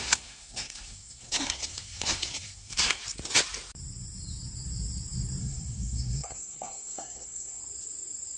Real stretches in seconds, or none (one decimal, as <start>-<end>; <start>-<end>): 3.0-5.4; 7.6-8.4